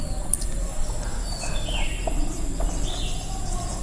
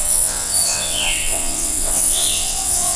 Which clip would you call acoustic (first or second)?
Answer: first